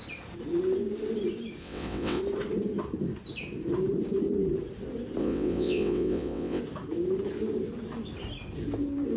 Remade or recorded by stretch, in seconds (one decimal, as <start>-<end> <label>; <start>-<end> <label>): 0.0-1.6 recorded; 1.6-2.2 remade; 2.2-5.2 recorded; 5.2-6.6 remade; 6.6-9.2 recorded